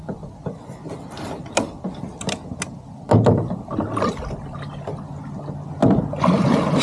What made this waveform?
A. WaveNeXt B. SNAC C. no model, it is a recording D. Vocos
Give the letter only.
C